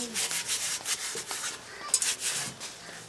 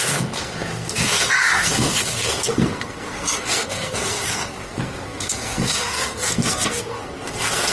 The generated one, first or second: second